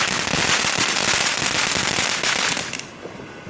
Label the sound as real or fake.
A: real